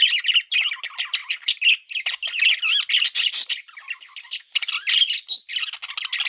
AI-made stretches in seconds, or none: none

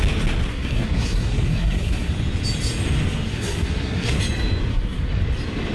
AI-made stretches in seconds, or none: 0.5-2.1 (codec, SNAC); 3.3-4.2; 4.7-5.2